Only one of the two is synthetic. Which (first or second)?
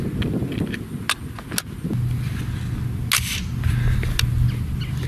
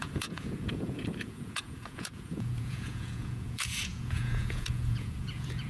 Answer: second